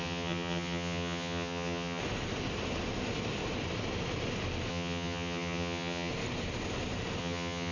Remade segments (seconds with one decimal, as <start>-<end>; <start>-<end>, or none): 0.0-2.0; 4.7-6.1; 7.2-7.7